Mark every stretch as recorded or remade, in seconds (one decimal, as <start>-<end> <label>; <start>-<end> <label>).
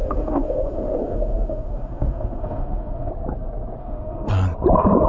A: 0.0-3.1 remade; 3.1-3.8 recorded; 3.8-4.3 remade; 4.3-5.1 recorded